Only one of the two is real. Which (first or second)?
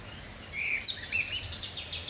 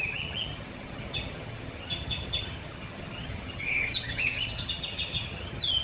first